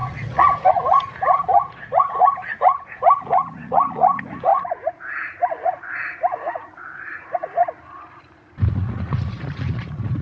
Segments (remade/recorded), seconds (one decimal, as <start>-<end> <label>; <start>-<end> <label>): 0.0-7.6 remade; 7.6-8.7 recorded; 8.7-10.2 remade